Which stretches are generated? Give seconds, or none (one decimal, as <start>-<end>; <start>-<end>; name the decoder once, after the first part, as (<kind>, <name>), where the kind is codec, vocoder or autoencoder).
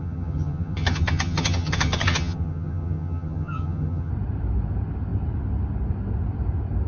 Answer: 0.0-4.1 (vocoder, HiFi-GAN)